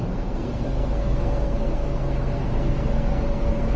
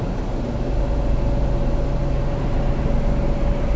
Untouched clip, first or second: second